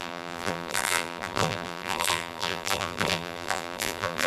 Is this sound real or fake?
fake